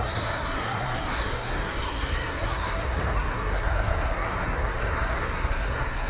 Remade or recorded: remade